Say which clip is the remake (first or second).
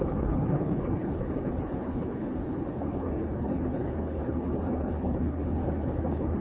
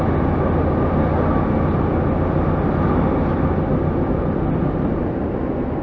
first